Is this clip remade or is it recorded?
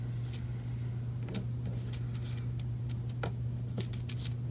recorded